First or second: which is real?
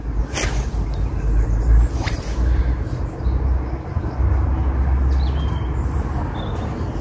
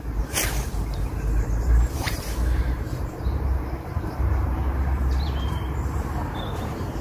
first